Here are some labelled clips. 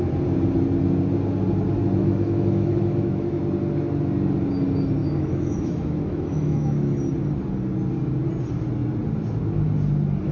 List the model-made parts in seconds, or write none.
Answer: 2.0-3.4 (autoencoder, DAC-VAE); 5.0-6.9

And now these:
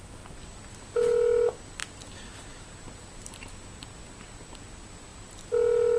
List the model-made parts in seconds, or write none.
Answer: none

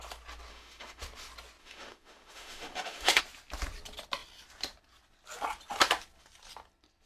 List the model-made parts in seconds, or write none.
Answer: 0.5-1.0 (autoencoder, DAC-VAE); 1.6-3.2

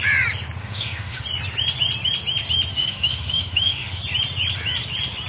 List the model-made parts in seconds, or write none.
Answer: 0.6-1.2 (autoencoder, DAC-VAE); 2.7-4.0

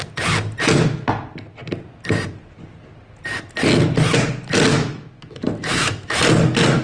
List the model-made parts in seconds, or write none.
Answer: 4.7-6.2 (autoencoder, DAC-VAE)

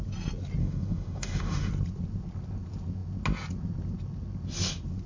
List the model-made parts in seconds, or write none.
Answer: 0.6-1.7 (autoencoder, DAC-VAE)

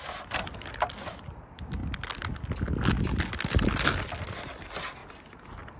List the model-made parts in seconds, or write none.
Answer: none